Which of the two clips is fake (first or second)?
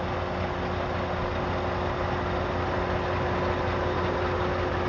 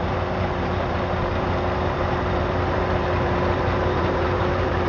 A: second